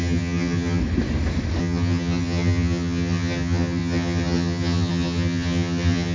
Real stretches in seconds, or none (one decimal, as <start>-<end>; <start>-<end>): 0.8-1.6